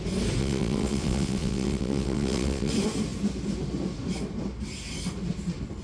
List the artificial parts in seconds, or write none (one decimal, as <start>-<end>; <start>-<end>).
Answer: 0.4-2.7

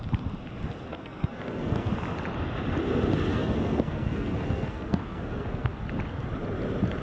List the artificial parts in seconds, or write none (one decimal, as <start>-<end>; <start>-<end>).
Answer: 0.9-1.9; 3.3-5.7

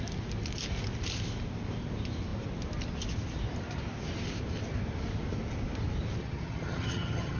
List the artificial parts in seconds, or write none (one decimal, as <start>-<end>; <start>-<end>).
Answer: 6.2-7.4

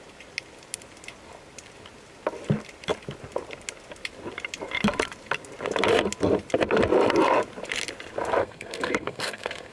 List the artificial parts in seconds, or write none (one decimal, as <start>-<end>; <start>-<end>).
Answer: 8.4-9.7

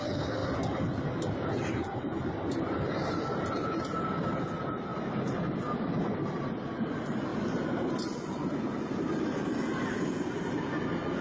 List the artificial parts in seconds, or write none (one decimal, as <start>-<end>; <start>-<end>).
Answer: none